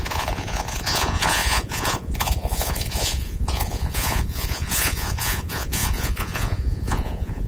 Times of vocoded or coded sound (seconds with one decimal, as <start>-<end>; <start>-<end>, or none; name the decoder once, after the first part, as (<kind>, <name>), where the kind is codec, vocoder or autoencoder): 0.0-7.5 (vocoder, Vocos)